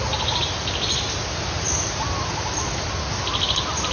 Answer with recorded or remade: recorded